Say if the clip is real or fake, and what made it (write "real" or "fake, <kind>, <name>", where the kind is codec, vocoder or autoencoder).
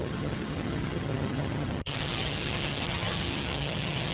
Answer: fake, vocoder, HiFi-GAN